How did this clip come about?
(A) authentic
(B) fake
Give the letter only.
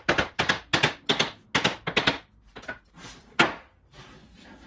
A